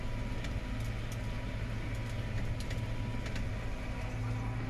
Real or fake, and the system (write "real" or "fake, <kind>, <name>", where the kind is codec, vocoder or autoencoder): real